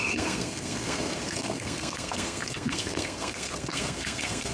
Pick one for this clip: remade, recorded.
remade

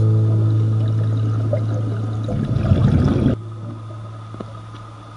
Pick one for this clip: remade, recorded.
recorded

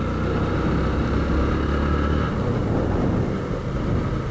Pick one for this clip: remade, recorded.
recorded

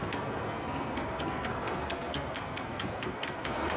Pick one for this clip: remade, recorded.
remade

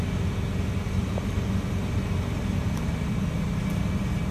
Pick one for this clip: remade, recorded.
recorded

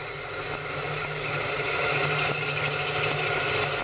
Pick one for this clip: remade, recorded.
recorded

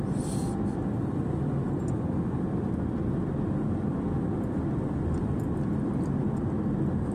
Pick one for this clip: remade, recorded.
recorded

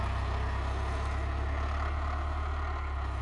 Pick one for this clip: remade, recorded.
recorded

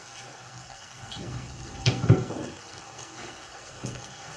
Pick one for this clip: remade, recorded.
remade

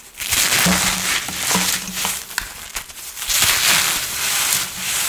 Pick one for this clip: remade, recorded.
recorded